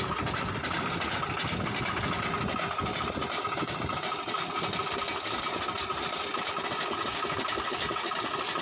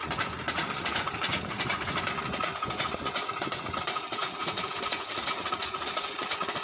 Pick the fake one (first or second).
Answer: second